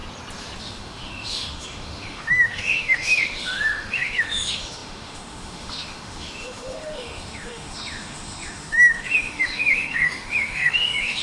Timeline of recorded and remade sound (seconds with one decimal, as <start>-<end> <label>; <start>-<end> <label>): 0.0-0.6 recorded; 0.6-11.2 remade